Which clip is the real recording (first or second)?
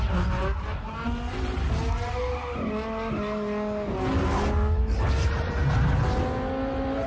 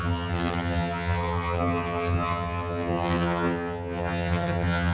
first